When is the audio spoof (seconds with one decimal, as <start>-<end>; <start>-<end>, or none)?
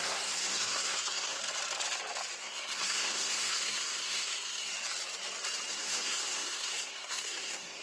0.0-1.4; 2.4-4.7; 5.7-7.8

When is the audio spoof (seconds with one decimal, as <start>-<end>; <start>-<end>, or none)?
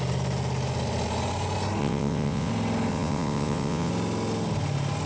1.8-2.5; 2.9-3.9